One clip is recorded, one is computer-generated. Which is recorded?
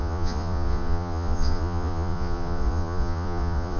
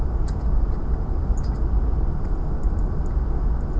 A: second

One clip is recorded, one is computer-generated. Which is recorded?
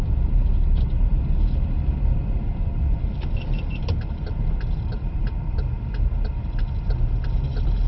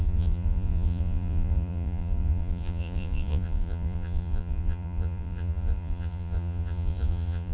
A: first